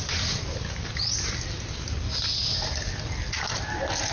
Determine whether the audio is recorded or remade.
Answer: recorded